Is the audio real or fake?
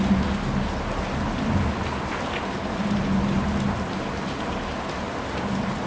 real